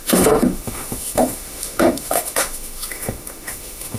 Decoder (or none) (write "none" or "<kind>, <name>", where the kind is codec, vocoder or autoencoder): autoencoder, DAC-VAE